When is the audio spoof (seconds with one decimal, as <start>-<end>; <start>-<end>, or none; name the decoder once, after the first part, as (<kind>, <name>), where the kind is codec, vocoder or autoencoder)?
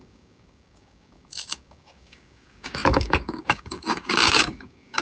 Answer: 0.0-5.0 (codec, DAC)